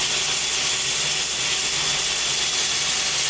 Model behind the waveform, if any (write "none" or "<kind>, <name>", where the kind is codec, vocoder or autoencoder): none